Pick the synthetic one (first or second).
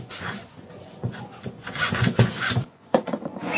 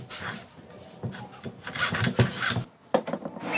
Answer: first